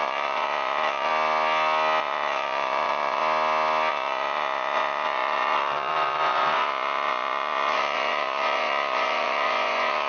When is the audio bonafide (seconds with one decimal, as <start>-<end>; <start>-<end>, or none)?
1.1-2.0; 3.2-3.9